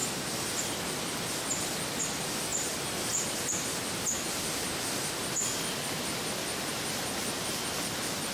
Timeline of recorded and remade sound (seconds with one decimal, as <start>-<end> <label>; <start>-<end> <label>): 0.0-8.3 recorded